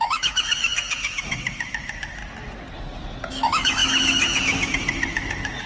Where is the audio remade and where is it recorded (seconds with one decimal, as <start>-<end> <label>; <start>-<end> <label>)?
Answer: 0.0-2.2 remade; 2.2-3.3 recorded; 3.3-5.7 remade